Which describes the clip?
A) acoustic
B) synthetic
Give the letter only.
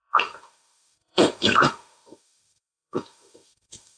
B